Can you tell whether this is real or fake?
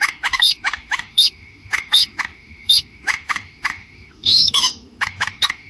fake